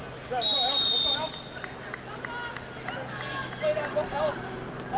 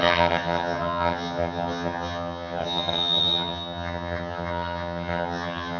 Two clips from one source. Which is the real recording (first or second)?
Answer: first